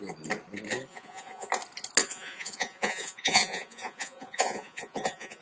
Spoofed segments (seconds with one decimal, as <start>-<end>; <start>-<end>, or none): 0.9-1.5; 2.0-5.4